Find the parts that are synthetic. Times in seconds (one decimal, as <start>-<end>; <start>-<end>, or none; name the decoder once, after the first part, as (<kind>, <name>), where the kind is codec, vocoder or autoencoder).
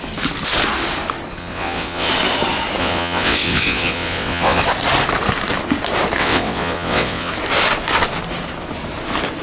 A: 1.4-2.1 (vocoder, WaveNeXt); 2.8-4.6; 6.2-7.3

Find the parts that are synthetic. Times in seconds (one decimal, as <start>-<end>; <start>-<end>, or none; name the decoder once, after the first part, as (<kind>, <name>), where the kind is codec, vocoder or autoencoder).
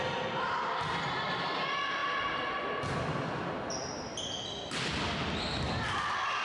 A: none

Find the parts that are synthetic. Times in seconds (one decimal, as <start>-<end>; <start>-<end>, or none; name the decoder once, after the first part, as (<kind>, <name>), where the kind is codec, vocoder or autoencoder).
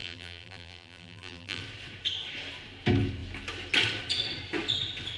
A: 0.0-1.6 (vocoder, BigVGAN v2)